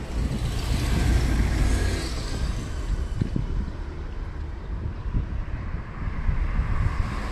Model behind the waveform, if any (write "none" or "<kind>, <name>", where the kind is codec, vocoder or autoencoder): none